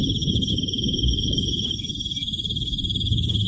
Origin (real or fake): fake